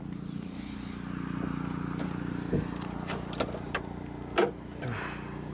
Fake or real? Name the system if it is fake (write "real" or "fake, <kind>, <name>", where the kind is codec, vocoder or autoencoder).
real